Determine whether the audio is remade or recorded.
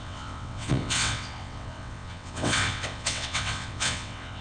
remade